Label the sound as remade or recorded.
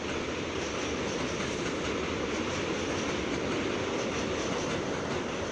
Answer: recorded